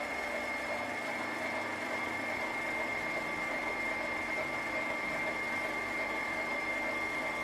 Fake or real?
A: fake